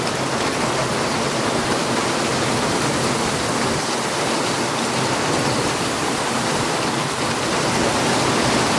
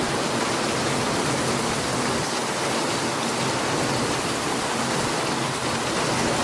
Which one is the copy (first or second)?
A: first